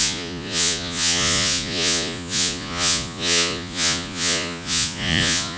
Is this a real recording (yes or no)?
no